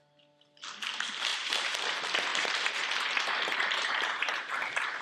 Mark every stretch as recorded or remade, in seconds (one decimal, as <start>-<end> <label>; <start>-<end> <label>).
0.0-1.3 recorded; 1.3-1.8 remade; 1.8-2.3 recorded; 2.3-5.0 remade